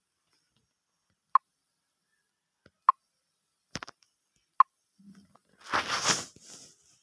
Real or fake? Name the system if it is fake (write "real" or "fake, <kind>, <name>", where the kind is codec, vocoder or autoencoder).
real